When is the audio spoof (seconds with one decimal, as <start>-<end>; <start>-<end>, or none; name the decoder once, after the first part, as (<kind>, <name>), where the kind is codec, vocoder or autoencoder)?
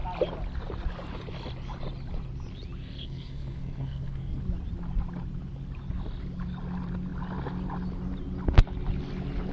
2.8-4.4 (codec, SNAC)